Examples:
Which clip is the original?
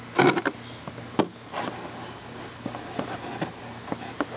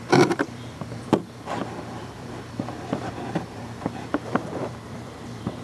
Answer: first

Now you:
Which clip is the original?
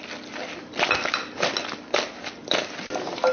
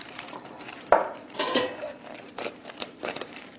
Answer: first